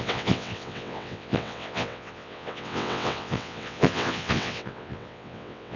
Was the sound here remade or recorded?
remade